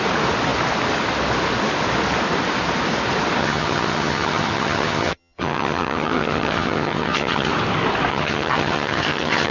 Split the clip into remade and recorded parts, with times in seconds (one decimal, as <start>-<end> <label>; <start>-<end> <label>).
0.0-3.4 recorded; 3.4-7.5 remade; 7.5-8.1 recorded; 8.1-9.5 remade